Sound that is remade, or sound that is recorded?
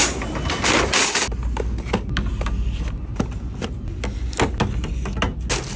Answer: recorded